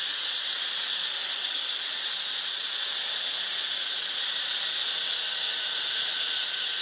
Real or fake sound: real